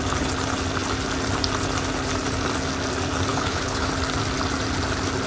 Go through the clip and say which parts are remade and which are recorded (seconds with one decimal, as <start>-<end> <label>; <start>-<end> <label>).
0.0-3.3 recorded; 3.3-3.9 remade; 3.9-5.3 recorded

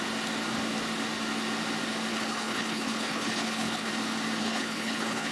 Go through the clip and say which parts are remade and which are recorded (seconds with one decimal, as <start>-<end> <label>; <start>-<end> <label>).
0.0-2.1 recorded; 2.1-3.9 remade; 3.9-4.4 recorded; 4.4-5.3 remade

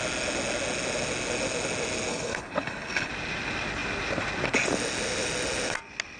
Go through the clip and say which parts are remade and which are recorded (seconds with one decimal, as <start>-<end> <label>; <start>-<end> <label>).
0.0-2.1 recorded; 2.1-3.1 remade; 3.1-6.2 recorded

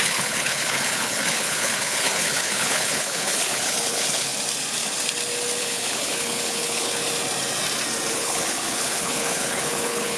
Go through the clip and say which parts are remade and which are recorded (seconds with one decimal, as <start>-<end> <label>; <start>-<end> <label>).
0.0-4.3 remade; 4.3-5.6 recorded; 5.6-7.0 remade; 7.0-8.1 recorded; 8.1-10.2 remade

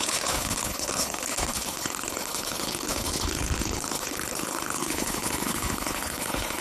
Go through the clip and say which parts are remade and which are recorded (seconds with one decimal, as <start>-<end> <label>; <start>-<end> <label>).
0.0-6.6 remade

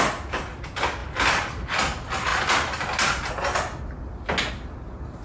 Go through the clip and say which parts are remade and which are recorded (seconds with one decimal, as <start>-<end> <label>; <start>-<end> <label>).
0.0-5.2 recorded

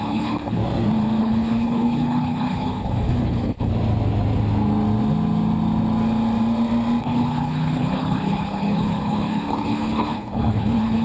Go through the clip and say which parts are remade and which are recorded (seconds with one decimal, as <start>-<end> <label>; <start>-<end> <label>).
0.0-0.6 remade; 0.6-1.2 recorded; 1.2-3.7 remade; 3.7-7.0 recorded; 7.0-11.0 remade

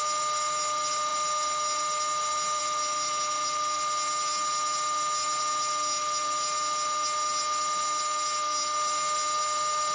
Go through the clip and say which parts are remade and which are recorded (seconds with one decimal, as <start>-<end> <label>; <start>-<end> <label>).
0.0-9.9 recorded